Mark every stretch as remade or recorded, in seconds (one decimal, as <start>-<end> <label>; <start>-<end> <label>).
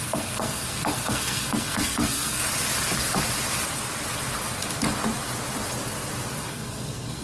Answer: 0.0-2.4 remade; 2.4-6.5 recorded; 6.5-7.2 remade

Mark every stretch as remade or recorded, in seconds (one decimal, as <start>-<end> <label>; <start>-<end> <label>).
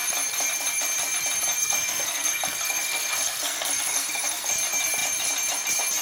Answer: 0.0-1.6 recorded; 1.6-4.5 remade; 4.5-6.0 recorded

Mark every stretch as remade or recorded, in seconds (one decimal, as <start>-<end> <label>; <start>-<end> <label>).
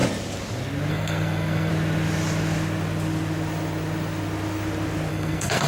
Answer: 0.0-0.9 recorded; 0.9-1.7 remade; 1.7-5.1 recorded; 5.1-5.7 remade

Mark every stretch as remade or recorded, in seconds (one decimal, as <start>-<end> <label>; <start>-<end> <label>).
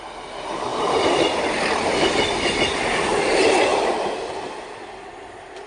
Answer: 0.0-5.7 recorded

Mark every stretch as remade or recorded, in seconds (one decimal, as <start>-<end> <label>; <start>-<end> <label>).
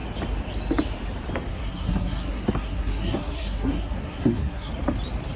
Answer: 0.0-1.5 recorded; 1.5-4.7 remade; 4.7-5.4 recorded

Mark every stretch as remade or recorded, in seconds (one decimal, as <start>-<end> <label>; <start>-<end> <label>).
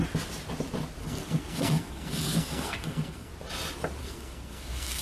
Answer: 0.0-1.0 recorded; 1.0-3.3 remade; 3.3-4.0 recorded; 4.0-5.0 remade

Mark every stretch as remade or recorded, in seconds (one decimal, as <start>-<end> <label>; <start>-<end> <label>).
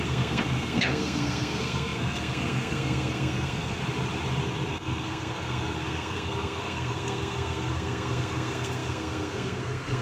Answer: 0.0-3.8 remade; 3.8-4.7 recorded; 4.7-10.0 remade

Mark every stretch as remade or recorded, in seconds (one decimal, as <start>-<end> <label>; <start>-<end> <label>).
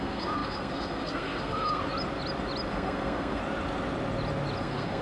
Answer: 0.0-1.8 remade; 1.8-2.7 recorded; 2.7-3.4 remade; 3.4-4.6 recorded; 4.6-5.0 remade